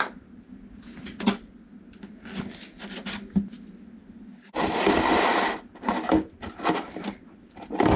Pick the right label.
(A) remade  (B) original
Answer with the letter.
B